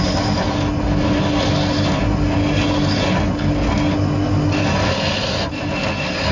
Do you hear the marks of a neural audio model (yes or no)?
no